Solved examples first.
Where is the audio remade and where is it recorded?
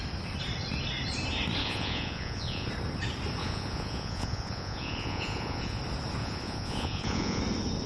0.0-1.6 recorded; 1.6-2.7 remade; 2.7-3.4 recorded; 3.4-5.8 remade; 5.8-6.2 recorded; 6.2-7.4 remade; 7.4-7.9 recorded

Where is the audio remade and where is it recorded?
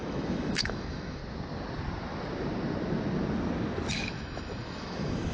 0.0-1.2 remade; 1.2-3.9 recorded; 3.9-5.3 remade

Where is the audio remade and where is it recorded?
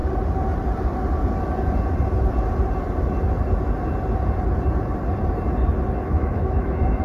0.0-6.0 recorded; 6.0-7.0 remade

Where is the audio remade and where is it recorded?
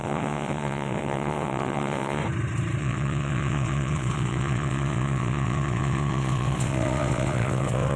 0.0-2.2 remade; 2.2-2.8 recorded; 2.8-8.0 remade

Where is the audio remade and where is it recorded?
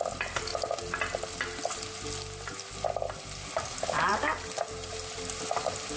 0.0-6.0 recorded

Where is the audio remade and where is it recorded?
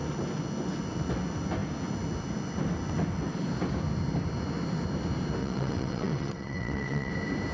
0.0-5.4 recorded; 5.4-7.1 remade; 7.1-7.5 recorded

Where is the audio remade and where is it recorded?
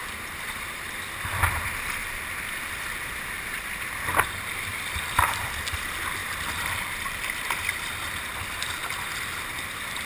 0.0-1.3 remade; 1.3-2.0 recorded; 2.0-2.6 remade; 2.6-4.7 recorded; 4.7-5.7 remade; 5.7-6.2 recorded; 6.2-8.2 remade; 8.2-10.1 recorded